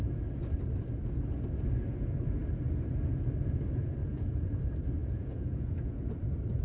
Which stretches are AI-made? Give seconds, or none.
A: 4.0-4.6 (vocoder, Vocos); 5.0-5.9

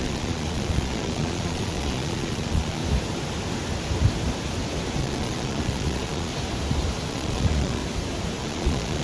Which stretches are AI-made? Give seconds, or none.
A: 0.0-2.8 (vocoder, Vocos); 5.0-6.3; 7.1-7.8; 8.4-9.0

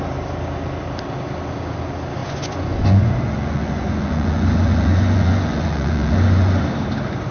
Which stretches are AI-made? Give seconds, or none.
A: 2.2-6.6 (vocoder, Vocos)